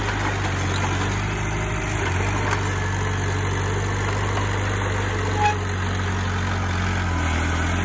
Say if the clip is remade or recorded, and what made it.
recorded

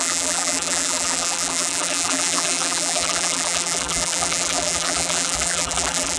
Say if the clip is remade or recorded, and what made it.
remade, vocoder, BigVGAN v2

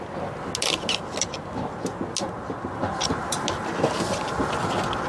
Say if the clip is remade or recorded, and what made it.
recorded